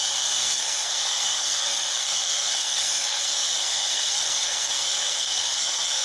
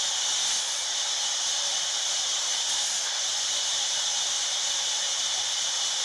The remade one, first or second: first